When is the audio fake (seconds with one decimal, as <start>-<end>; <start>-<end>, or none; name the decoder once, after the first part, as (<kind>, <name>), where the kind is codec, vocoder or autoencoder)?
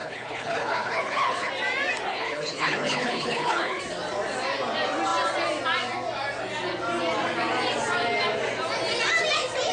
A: 0.0-1.5 (codec, HILCodec); 2.1-3.8